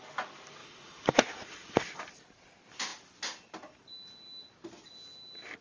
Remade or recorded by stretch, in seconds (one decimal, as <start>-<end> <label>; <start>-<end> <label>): 0.0-0.6 recorded; 0.6-1.8 remade; 1.8-5.6 recorded